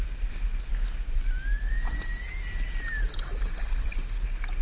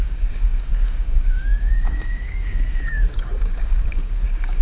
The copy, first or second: second